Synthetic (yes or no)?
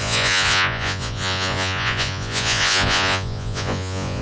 yes